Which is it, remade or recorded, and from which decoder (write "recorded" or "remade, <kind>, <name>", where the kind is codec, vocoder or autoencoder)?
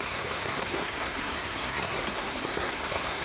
remade, codec, SNAC